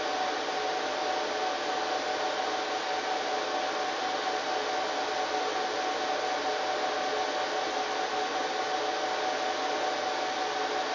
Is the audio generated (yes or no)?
no